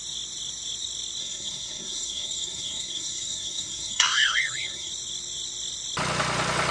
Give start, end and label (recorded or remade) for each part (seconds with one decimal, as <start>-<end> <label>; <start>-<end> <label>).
0.0-1.2 recorded; 1.2-4.9 remade; 4.9-6.7 recorded